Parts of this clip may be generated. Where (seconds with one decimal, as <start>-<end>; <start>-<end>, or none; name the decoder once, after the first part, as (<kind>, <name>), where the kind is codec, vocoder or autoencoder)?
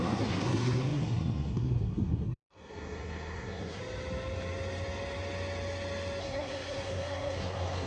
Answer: 0.0-3.8 (codec, SNAC); 6.2-7.9